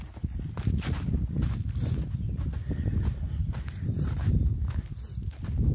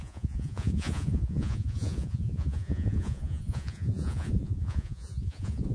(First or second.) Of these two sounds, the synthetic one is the second